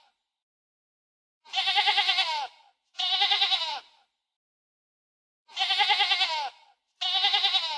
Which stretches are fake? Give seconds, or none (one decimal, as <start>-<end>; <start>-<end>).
1.0-5.7